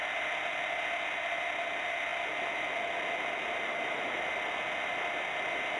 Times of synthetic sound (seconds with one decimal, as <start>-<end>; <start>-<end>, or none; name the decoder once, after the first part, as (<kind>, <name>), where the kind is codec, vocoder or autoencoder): 3.7-4.2 (autoencoder, DAC-VAE)